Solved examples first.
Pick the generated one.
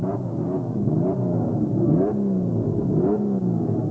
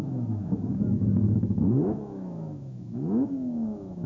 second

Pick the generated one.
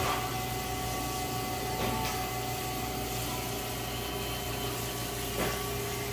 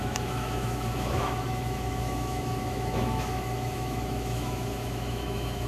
second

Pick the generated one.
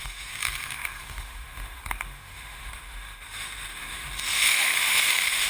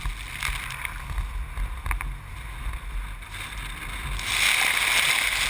first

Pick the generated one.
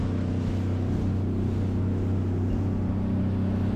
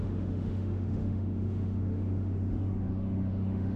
second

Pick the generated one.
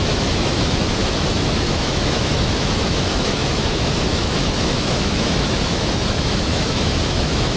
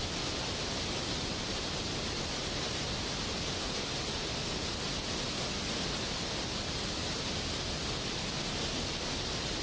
first